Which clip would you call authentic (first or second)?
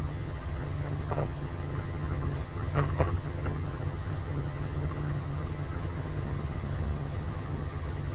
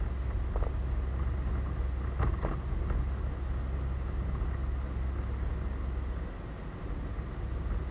second